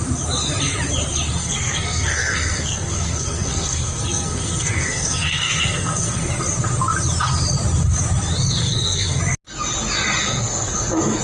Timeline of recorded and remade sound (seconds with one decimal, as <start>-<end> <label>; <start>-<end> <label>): 0.0-1.4 recorded; 1.4-6.3 remade; 6.3-8.6 recorded; 8.6-9.2 remade; 9.2-10.2 recorded; 10.2-11.2 remade